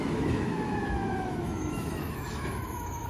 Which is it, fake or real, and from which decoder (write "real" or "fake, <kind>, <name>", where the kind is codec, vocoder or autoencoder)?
fake, autoencoder, DAC-VAE